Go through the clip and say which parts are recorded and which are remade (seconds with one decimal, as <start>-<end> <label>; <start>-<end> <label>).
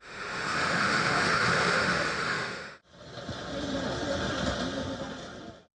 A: 0.0-2.8 remade; 2.8-5.7 recorded